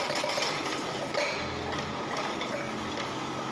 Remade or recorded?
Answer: recorded